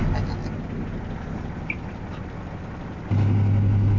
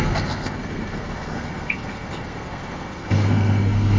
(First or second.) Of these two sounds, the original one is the first